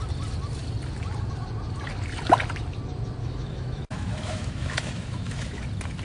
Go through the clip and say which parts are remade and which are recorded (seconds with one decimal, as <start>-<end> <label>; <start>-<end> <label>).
0.0-3.2 recorded; 3.2-5.6 remade; 5.6-6.0 recorded